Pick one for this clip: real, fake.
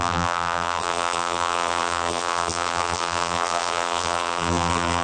fake